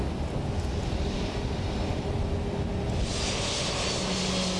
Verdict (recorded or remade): recorded